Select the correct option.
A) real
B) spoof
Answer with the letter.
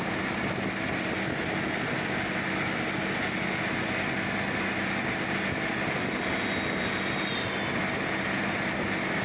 A